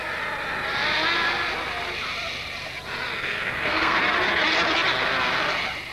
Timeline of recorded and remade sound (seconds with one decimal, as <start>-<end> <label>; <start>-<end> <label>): 0.0-3.1 recorded; 3.1-4.0 remade; 4.0-5.9 recorded